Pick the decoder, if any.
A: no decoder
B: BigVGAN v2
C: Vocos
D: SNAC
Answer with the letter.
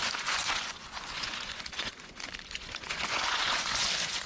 C